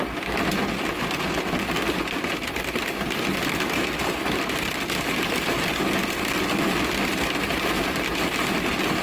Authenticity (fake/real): real